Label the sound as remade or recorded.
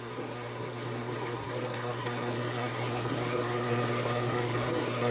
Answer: remade